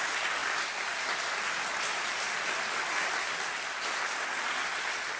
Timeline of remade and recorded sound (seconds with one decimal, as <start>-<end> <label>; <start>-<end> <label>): 0.0-5.2 recorded